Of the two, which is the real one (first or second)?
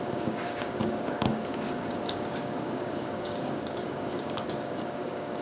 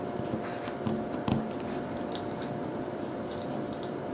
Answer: second